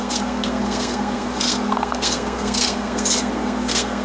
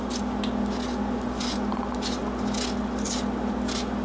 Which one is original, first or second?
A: second